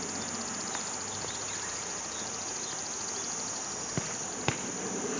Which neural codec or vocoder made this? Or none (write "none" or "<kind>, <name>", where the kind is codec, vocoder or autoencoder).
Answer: none